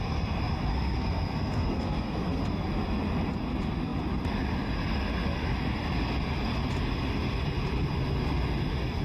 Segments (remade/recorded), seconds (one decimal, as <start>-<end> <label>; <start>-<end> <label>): 0.0-0.7 recorded; 0.7-2.4 remade; 2.4-9.0 recorded